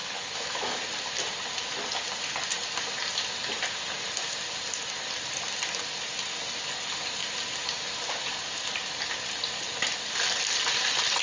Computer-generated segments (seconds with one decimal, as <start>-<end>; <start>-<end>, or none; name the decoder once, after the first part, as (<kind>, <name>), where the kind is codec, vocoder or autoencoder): 0.0-0.8 (autoencoder, DAC-VAE)